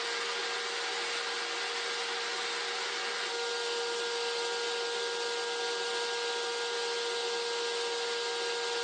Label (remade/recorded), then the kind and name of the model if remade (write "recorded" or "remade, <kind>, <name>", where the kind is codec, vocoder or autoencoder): recorded